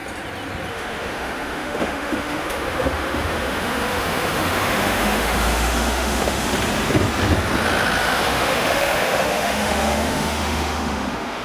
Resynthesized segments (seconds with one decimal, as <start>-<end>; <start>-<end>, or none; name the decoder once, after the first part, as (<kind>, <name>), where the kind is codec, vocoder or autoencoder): 0.7-6.5 (autoencoder, DAC-VAE); 8.0-11.4